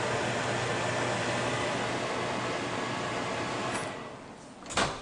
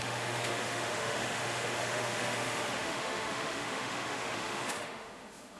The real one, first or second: first